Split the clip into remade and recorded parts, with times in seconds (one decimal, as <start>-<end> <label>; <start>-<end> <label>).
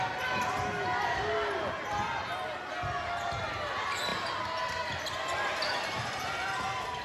0.0-7.0 recorded